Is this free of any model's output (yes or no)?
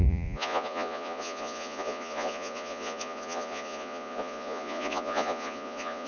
no